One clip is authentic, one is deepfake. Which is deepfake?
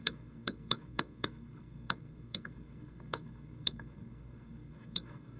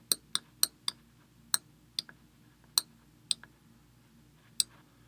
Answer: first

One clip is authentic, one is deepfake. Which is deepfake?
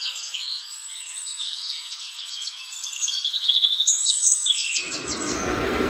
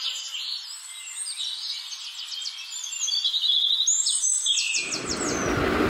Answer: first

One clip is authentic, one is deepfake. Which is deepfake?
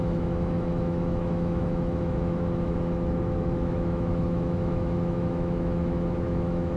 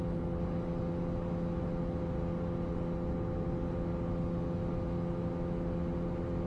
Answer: first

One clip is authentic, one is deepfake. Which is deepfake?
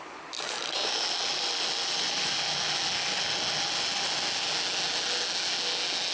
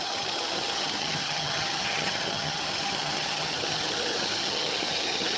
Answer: second